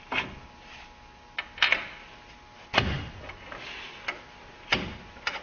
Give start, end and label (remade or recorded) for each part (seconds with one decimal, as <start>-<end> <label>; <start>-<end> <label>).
0.0-5.4 recorded